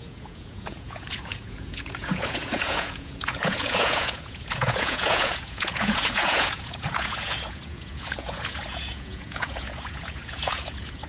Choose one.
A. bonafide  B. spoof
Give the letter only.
B